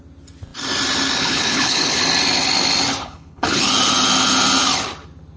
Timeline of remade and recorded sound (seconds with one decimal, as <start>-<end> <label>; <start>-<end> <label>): 0.0-1.2 recorded; 1.2-2.0 remade; 2.0-3.0 recorded; 3.0-3.6 remade; 3.6-5.4 recorded